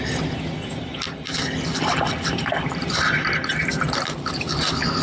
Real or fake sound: real